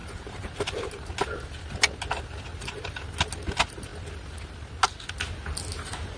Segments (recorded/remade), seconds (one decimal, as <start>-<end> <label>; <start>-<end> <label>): 0.0-0.9 remade; 0.9-2.5 recorded; 2.5-3.1 remade; 3.1-6.2 recorded

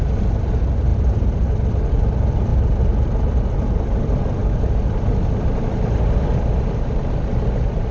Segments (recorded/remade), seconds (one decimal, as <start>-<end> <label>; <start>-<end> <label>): 0.0-7.9 recorded

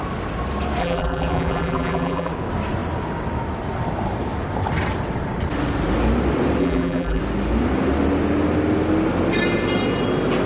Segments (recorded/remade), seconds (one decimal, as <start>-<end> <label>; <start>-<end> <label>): 0.0-0.8 recorded; 0.8-2.3 remade; 2.3-6.6 recorded; 6.6-7.2 remade; 7.2-10.5 recorded

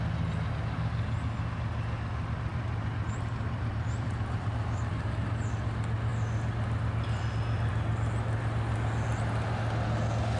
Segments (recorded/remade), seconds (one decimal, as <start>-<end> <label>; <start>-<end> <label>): 0.0-2.5 recorded; 2.5-4.5 remade; 4.5-10.4 recorded